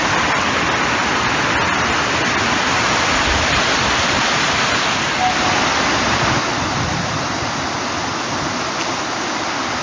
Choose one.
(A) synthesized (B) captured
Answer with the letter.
B